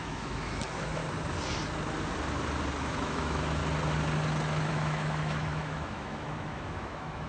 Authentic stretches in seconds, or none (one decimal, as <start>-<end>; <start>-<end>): 1.0-2.8; 3.6-4.7